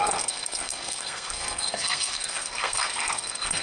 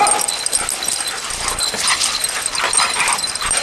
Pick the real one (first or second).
second